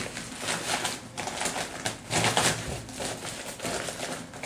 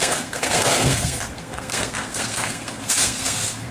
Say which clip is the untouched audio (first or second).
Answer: first